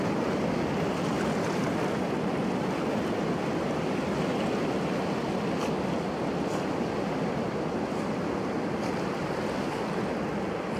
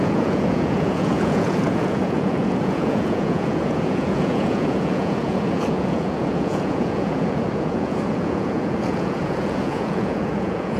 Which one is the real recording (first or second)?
first